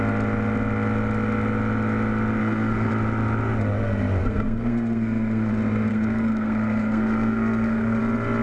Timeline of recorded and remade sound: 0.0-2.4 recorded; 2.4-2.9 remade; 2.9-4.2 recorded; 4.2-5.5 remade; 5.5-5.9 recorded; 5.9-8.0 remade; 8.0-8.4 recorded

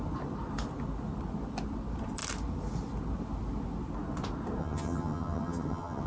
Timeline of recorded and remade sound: 0.0-4.6 recorded; 4.6-6.1 remade

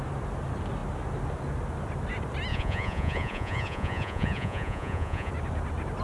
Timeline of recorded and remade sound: 0.0-2.5 recorded; 2.5-5.3 remade; 5.3-6.0 recorded

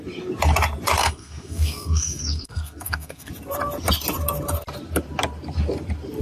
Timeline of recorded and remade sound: 0.0-1.0 recorded; 1.0-3.3 remade; 3.3-6.2 recorded

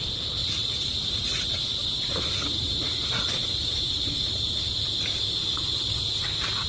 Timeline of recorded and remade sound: 0.0-0.4 recorded; 0.4-4.4 remade; 4.4-6.7 recorded

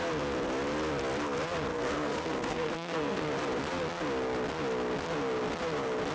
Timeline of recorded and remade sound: 0.0-1.7 recorded; 1.7-3.2 remade; 3.2-6.1 recorded

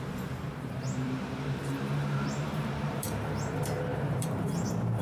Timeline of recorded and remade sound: 0.0-5.0 remade

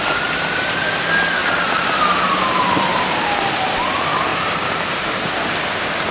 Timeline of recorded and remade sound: 0.0-1.4 recorded; 1.4-3.6 remade; 3.6-4.3 recorded; 4.3-5.3 remade; 5.3-6.1 recorded